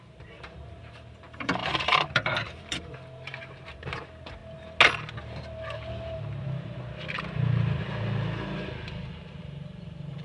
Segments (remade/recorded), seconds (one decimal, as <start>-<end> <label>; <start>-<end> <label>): 0.0-4.4 remade; 4.4-9.4 recorded; 9.4-10.2 remade